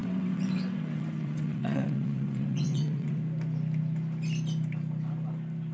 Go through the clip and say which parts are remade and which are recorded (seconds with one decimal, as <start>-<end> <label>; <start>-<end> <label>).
0.0-3.2 remade; 3.2-5.7 recorded